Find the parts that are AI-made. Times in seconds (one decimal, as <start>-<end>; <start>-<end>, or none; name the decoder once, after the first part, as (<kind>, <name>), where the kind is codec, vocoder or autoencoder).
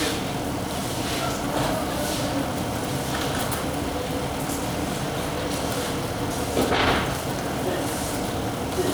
none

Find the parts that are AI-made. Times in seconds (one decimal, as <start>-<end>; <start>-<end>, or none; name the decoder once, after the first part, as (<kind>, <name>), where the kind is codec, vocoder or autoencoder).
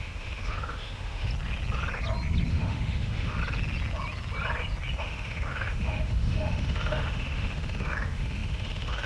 0.0-1.3 (autoencoder, DAC-VAE); 2.5-3.4; 5.0-9.1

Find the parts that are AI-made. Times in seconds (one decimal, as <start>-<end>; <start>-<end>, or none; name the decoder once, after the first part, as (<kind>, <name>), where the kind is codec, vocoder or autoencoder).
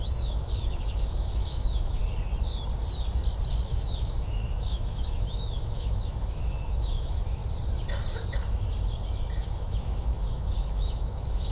0.0-2.0 (autoencoder, DAC-VAE); 3.7-7.4; 9.4-11.5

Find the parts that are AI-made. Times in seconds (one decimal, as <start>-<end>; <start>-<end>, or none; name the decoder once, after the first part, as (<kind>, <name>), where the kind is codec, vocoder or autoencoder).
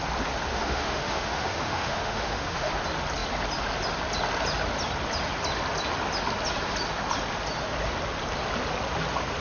0.5-2.7 (autoencoder, DAC-VAE)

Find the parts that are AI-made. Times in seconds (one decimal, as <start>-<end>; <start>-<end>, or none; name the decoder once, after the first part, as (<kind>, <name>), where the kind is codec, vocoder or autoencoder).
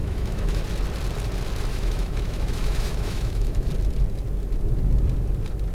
0.0-0.6 (autoencoder, DAC-VAE); 1.7-3.7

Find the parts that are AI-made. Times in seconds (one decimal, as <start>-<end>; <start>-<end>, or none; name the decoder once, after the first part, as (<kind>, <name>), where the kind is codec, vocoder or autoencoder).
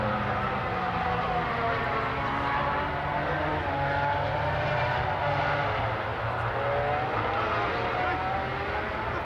none